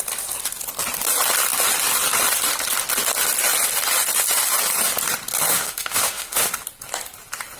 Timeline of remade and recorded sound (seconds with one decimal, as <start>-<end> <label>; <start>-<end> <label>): 0.0-5.5 recorded; 5.5-6.5 remade; 6.5-7.6 recorded